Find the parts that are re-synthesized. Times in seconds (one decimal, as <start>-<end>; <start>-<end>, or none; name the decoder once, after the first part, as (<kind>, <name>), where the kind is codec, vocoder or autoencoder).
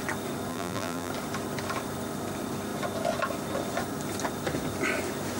0.5-1.1 (vocoder, BigVGAN v2)